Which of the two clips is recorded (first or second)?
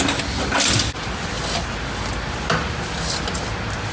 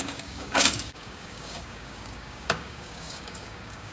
first